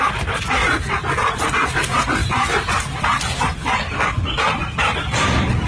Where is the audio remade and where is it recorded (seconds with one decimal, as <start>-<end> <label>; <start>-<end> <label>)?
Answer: 0.0-5.7 recorded